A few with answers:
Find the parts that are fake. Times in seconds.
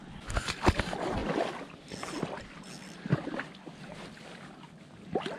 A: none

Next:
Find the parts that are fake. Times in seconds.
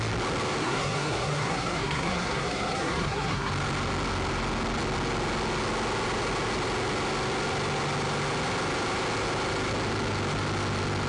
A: 0.6-3.5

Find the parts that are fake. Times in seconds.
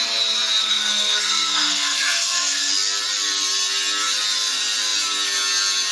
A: 0.6-2.7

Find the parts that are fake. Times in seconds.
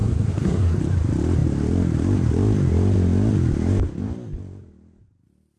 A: 0.0-0.8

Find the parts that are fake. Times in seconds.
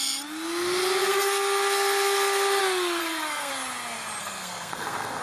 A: 1.0-2.6; 3.0-3.5; 4.2-5.2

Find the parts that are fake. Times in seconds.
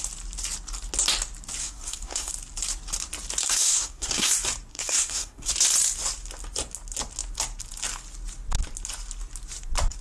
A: 1.6-2.3; 3.4-4.3; 4.7-5.5